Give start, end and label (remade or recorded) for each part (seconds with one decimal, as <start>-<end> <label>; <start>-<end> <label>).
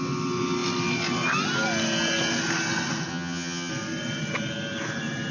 0.0-3.1 recorded; 3.1-3.7 remade; 3.7-5.3 recorded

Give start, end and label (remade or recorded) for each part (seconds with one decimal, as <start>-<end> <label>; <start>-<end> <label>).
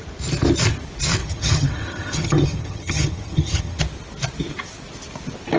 0.0-1.2 recorded; 1.2-3.8 remade; 3.8-5.6 recorded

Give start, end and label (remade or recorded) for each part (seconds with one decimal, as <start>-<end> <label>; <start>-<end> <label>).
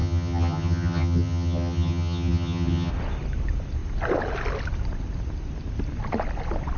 0.0-2.9 remade; 2.9-6.8 recorded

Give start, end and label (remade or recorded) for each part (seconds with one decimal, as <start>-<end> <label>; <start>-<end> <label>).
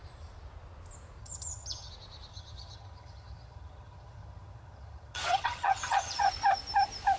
0.0-1.2 recorded; 1.2-1.9 remade; 1.9-2.3 recorded; 2.3-6.3 remade; 6.3-7.2 recorded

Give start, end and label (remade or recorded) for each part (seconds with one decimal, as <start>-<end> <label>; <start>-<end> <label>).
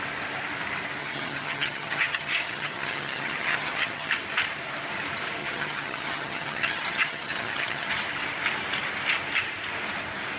0.0-1.0 recorded; 1.0-4.1 remade; 4.1-5.4 recorded; 5.4-7.9 remade; 7.9-10.4 recorded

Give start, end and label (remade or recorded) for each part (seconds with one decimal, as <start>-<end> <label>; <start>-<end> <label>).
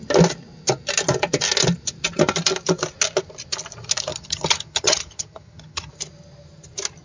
0.0-4.1 recorded; 4.1-5.9 remade; 5.9-7.0 recorded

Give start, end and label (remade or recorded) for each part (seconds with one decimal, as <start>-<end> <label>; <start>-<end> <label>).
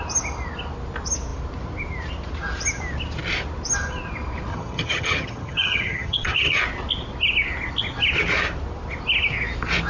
0.0-4.5 recorded; 4.5-6.6 remade; 6.6-9.9 recorded